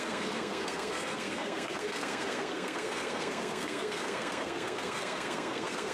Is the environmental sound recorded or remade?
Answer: remade